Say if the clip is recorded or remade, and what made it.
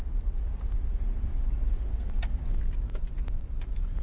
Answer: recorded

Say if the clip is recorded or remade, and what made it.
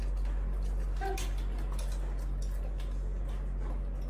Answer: recorded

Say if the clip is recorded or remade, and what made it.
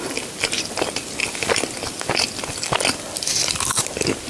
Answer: recorded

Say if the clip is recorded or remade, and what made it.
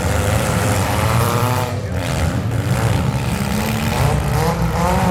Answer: remade, vocoder, BigVGAN v2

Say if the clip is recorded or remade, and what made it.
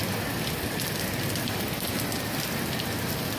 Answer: recorded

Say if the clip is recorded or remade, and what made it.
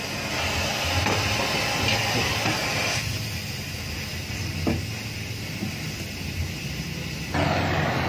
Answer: recorded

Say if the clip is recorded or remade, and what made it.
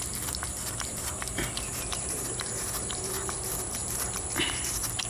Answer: remade, vocoder, BigVGAN v2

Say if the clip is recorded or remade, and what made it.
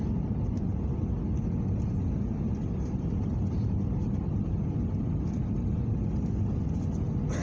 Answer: recorded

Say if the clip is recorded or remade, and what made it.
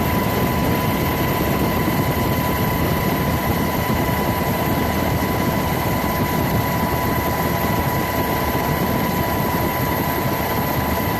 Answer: remade, vocoder, BigVGAN v2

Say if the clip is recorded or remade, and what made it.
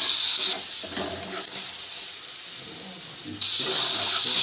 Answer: recorded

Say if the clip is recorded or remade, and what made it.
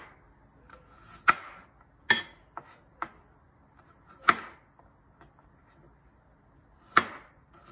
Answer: recorded